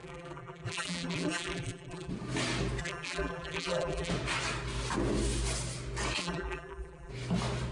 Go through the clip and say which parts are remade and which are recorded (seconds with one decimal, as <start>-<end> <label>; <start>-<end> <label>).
0.0-2.1 remade; 2.1-2.8 recorded; 2.8-4.1 remade; 4.1-6.2 recorded; 6.2-7.1 remade; 7.1-7.7 recorded